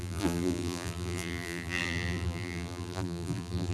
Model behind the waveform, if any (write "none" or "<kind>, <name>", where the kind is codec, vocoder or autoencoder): vocoder, BigVGAN v2